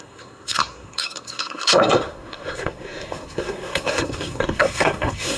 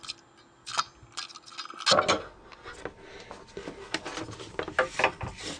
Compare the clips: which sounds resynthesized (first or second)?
first